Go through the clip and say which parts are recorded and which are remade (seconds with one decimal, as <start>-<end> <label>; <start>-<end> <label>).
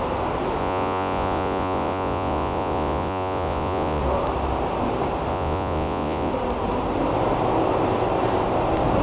0.0-0.6 recorded; 0.6-4.0 remade; 4.0-5.3 recorded; 5.3-6.3 remade; 6.3-9.0 recorded